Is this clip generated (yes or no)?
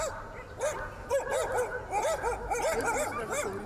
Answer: no